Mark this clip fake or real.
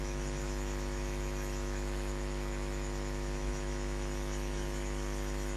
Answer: fake